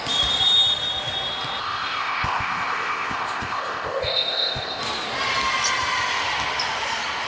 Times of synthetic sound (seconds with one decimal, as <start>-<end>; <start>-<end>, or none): 1.6-4.8